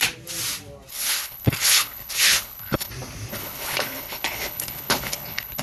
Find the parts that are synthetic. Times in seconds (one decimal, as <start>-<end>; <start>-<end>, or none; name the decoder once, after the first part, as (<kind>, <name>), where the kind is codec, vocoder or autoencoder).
0.9-2.9 (codec, HILCodec); 3.3-5.6